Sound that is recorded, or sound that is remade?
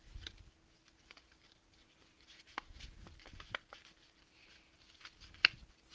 recorded